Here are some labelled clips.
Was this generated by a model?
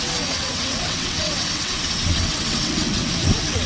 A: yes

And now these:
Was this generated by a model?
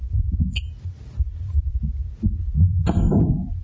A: no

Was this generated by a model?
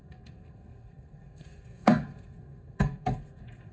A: yes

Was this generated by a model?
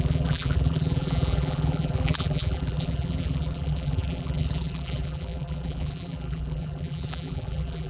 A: yes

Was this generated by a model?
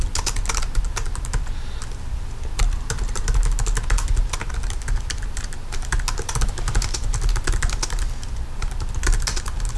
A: no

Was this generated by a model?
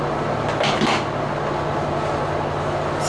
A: no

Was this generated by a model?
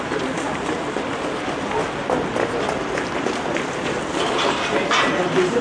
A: no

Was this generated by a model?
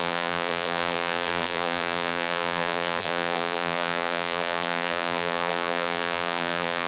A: yes